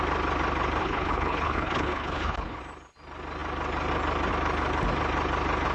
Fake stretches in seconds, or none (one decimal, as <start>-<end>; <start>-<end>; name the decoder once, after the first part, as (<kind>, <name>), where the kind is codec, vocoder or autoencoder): 0.8-2.6 (codec, HILCodec)